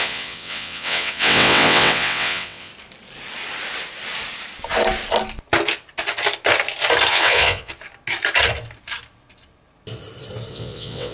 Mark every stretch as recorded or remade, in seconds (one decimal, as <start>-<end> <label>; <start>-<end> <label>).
0.0-2.7 remade; 2.7-7.1 recorded; 7.1-7.7 remade; 7.7-10.5 recorded; 10.5-11.1 remade